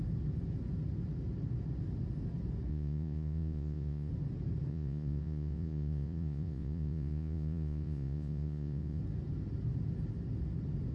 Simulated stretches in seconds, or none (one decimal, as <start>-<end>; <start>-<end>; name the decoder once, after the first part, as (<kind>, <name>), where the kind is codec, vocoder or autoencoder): 2.7-4.1 (vocoder, Vocos); 4.7-9.0